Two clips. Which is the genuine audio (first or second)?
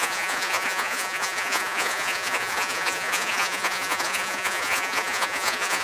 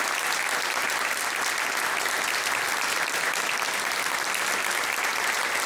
second